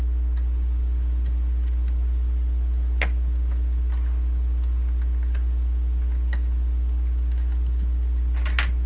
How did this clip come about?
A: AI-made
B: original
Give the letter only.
B